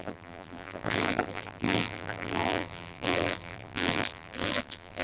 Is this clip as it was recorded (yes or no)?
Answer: no